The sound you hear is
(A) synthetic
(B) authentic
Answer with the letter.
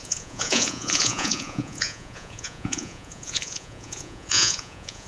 A